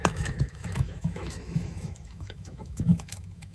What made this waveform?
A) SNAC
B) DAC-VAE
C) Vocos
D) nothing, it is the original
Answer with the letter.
B